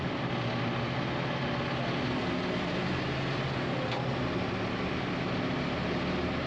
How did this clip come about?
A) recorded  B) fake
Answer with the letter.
A